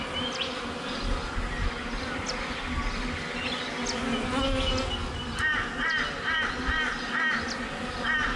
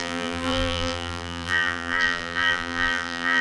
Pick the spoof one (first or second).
second